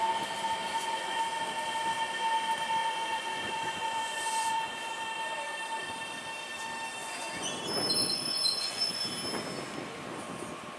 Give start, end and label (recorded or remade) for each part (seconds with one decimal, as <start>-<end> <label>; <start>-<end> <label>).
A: 0.0-0.6 recorded; 0.6-1.2 remade; 1.2-2.8 recorded; 2.8-4.9 remade; 4.9-7.0 recorded; 7.0-7.5 remade; 7.5-8.0 recorded; 8.0-9.0 remade; 9.0-10.8 recorded

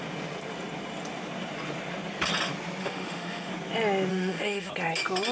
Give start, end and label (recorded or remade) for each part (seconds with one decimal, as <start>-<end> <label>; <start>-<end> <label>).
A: 0.0-2.8 recorded; 2.8-3.5 remade; 3.5-4.1 recorded; 4.1-4.7 remade; 4.7-5.3 recorded

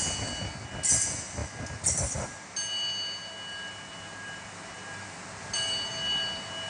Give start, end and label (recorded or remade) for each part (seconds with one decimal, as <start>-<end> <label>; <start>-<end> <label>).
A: 0.0-6.7 recorded

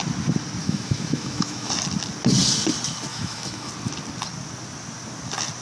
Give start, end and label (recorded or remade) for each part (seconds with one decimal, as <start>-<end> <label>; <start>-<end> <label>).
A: 0.0-0.6 recorded; 0.6-1.7 remade; 1.7-3.1 recorded; 3.1-3.7 remade; 3.7-5.6 recorded

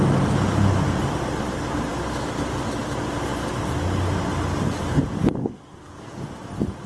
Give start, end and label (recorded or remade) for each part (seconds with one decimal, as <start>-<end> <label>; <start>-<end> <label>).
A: 0.0-5.4 recorded; 5.4-6.2 remade; 6.2-6.9 recorded